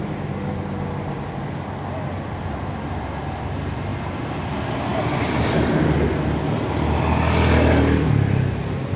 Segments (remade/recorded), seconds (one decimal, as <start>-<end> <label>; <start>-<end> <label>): 0.0-9.0 recorded